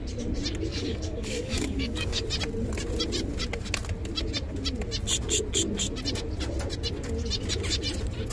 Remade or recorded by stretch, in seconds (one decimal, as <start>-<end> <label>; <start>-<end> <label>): 0.0-0.7 recorded; 0.7-2.2 remade; 2.2-8.3 recorded